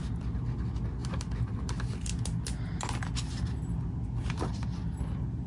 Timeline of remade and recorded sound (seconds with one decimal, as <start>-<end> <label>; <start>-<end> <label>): 0.0-5.5 recorded

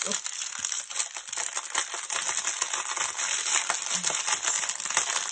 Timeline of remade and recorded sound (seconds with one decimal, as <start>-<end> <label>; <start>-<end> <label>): 0.0-5.3 recorded

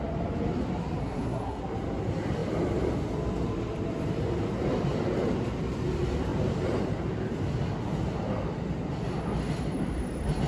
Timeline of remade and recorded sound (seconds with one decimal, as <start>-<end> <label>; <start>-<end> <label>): 0.0-1.0 recorded; 1.0-1.6 remade; 1.6-10.5 recorded

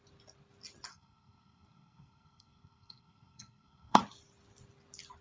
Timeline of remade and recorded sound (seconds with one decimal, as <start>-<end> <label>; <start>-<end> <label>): 0.0-0.9 recorded; 0.9-4.0 remade; 4.0-5.2 recorded

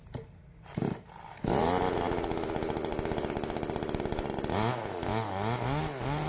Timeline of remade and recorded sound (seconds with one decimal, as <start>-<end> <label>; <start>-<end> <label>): 0.0-6.3 recorded

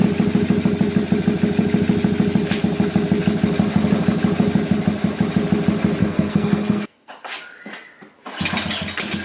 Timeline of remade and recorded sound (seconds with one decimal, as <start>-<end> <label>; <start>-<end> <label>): 0.0-6.0 recorded; 6.0-7.1 remade; 7.1-9.2 recorded

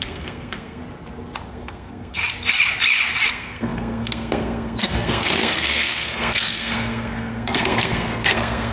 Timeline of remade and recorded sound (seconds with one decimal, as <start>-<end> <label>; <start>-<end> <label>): 0.0-0.8 remade; 0.8-1.5 recorded; 1.5-2.2 remade; 2.2-3.3 recorded; 3.3-8.7 remade

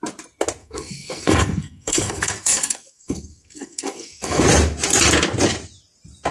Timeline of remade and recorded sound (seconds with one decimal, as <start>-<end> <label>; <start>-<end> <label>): 0.0-0.6 recorded; 0.6-4.4 remade; 4.4-6.3 recorded